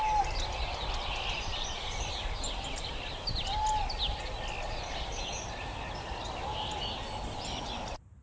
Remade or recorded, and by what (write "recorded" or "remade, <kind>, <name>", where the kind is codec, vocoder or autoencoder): recorded